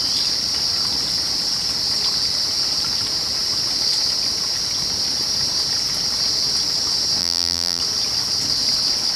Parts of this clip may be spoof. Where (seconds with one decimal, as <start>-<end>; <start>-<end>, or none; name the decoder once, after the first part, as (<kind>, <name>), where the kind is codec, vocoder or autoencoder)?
7.2-7.8 (vocoder, BigVGAN v2)